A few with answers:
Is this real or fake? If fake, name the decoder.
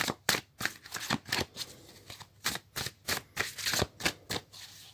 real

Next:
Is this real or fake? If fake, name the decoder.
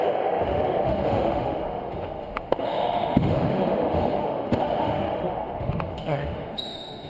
fake, autoencoder, DAC-VAE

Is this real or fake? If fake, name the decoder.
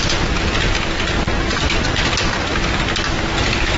real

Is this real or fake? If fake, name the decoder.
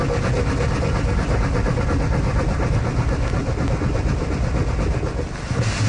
real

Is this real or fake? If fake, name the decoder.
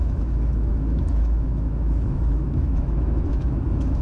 fake, autoencoder, DAC-VAE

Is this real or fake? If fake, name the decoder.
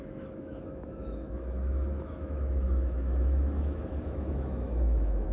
fake, autoencoder, DAC-VAE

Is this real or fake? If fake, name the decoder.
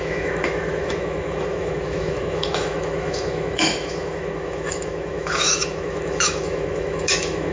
fake, autoencoder, DAC-VAE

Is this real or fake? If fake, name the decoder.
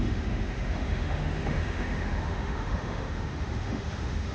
fake, autoencoder, DAC-VAE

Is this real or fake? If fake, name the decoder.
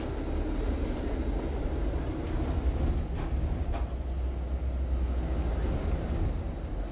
real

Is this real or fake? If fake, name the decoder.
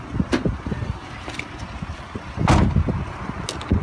real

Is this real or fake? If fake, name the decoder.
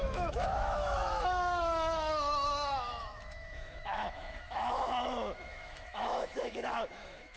fake, autoencoder, DAC-VAE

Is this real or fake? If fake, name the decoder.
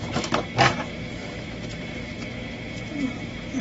fake, autoencoder, DAC-VAE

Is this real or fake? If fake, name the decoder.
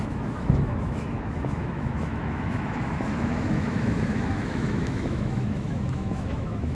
fake, autoencoder, DAC-VAE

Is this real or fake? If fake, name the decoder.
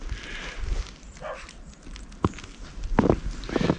real